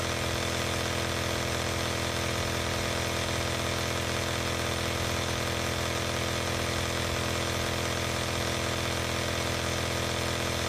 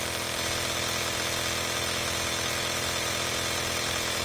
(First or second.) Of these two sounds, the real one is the first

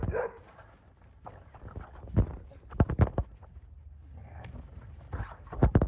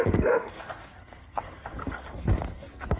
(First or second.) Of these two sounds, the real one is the first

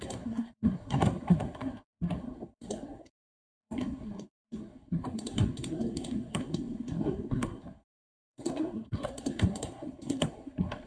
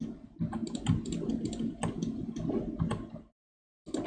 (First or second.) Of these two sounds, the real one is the second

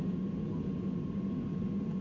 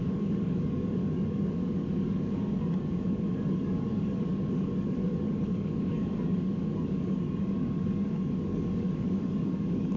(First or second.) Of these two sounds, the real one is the first